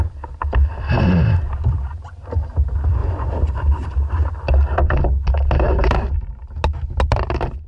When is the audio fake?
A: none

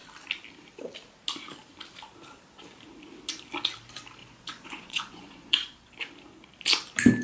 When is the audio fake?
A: 4.2-5.9 (vocoder, Vocos)

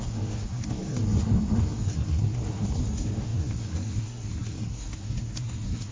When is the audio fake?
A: 0.0-5.9 (codec, SNAC)

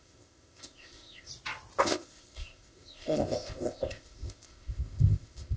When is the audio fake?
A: 0.0-1.3 (codec, ZipCodec); 1.8-5.6

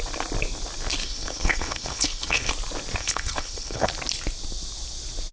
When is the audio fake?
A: 1.0-2.5 (codec, HILCodec); 3.0-3.9

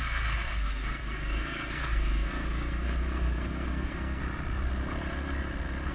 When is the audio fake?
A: 0.0-4.2 (codec, SNAC)